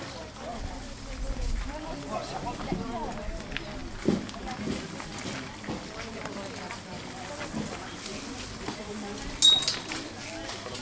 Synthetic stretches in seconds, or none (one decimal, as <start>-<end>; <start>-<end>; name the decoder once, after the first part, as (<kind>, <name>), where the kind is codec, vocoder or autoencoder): none